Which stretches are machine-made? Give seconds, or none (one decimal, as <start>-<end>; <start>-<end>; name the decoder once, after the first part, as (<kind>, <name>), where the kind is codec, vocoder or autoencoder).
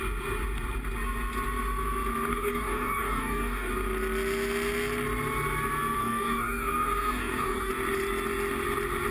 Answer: 2.3-3.7 (codec, DAC); 6.0-7.7